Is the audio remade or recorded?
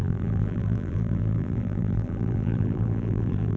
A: remade